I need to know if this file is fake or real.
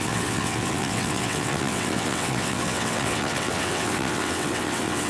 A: fake